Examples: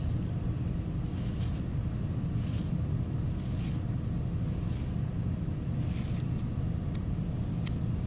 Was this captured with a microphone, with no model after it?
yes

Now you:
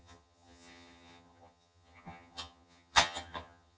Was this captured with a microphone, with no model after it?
no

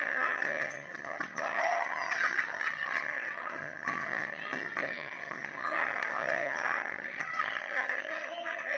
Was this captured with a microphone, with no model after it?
no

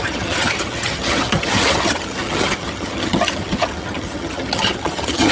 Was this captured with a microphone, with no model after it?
no